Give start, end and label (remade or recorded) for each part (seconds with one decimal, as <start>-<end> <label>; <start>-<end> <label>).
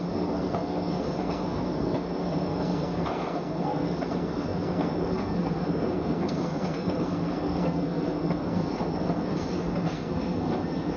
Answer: 0.0-11.0 remade